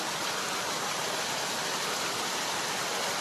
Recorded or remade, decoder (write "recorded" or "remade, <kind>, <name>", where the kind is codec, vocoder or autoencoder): recorded